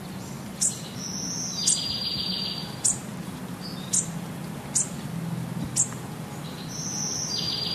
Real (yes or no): yes